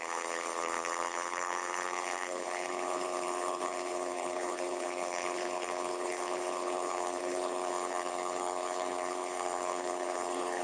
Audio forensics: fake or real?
fake